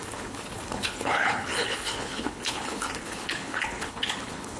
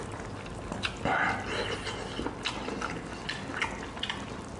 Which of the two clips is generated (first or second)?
first